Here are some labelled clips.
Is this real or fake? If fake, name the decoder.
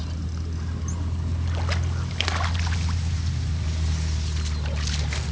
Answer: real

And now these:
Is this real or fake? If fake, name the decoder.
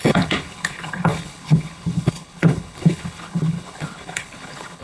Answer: fake, codec, HILCodec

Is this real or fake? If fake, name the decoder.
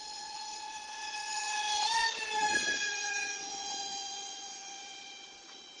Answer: fake, vocoder, Vocos